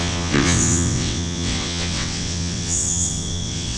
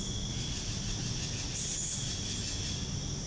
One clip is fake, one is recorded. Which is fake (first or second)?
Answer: first